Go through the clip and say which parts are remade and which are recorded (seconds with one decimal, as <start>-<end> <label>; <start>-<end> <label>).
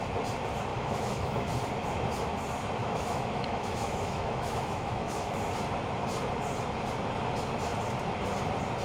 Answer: 0.0-0.7 recorded; 0.7-1.5 remade; 1.5-2.8 recorded; 2.8-5.5 remade; 5.5-8.8 recorded